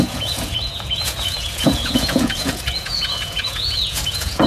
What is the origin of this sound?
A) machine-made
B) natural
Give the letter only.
A